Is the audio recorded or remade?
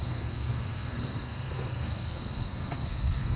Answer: remade